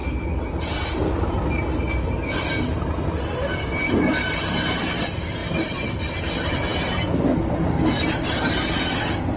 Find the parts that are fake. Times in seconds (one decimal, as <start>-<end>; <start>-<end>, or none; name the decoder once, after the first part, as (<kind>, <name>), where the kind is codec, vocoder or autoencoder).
none